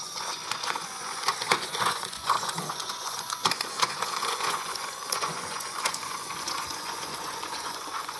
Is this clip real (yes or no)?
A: no